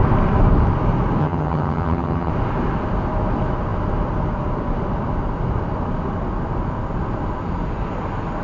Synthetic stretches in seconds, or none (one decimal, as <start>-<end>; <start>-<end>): 1.2-2.3